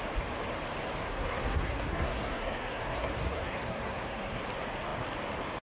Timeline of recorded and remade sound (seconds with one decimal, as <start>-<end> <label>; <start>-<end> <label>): 0.0-1.0 recorded; 1.0-4.4 remade; 4.4-5.6 recorded